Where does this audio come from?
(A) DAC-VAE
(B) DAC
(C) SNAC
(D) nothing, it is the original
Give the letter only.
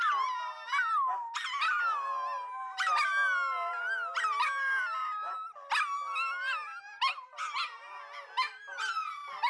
D